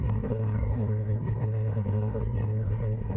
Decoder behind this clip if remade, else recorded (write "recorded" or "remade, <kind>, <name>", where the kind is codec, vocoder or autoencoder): remade, codec, SNAC